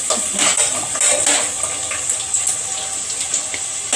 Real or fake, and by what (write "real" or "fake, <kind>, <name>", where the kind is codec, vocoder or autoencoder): real